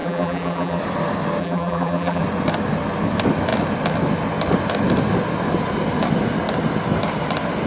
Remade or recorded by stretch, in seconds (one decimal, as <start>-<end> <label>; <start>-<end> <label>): 0.0-0.8 remade; 0.8-1.4 recorded; 1.4-2.2 remade; 2.2-7.7 recorded